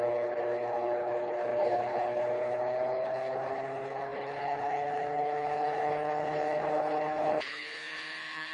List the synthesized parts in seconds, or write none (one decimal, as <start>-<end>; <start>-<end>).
0.0-8.5